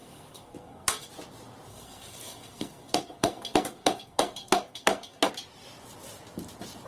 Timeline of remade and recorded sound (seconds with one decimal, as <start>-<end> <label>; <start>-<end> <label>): 0.0-1.1 remade; 1.1-1.7 recorded; 1.7-5.3 remade; 5.3-6.9 recorded